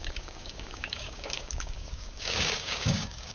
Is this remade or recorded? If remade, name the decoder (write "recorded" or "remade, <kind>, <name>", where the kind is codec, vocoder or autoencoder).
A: remade, codec, DAC